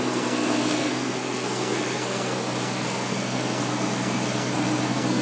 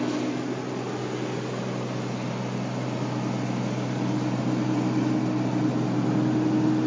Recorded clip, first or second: second